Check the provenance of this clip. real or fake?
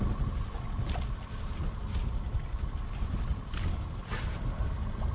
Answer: real